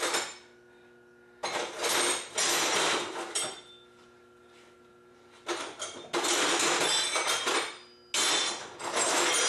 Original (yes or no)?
yes